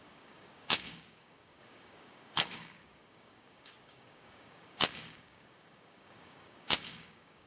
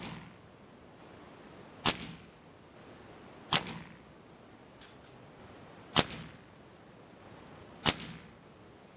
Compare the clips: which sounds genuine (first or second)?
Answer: second